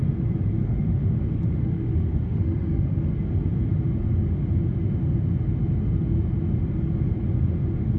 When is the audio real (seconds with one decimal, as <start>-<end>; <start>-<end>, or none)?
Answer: 0.0-0.6; 3.1-8.0